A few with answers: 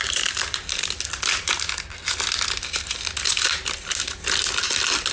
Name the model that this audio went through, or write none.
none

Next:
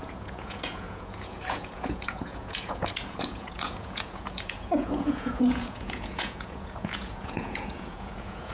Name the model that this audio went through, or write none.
vocoder, Vocos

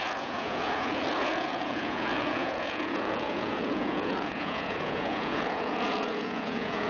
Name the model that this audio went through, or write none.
vocoder, Vocos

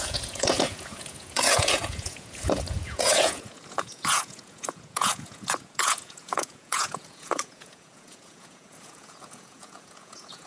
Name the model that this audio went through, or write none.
vocoder, Vocos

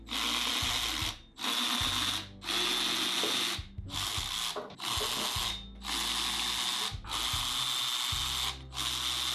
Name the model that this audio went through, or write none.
none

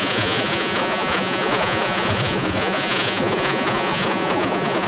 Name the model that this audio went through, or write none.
vocoder, Vocos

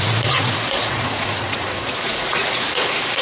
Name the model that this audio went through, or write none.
vocoder, Vocos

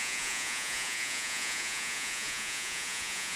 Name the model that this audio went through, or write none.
vocoder, Vocos